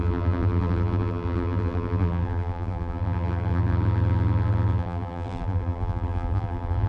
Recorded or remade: remade